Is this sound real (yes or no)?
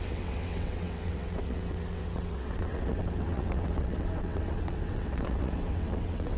no